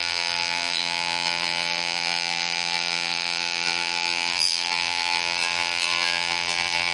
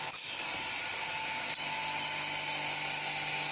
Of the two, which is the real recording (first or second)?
second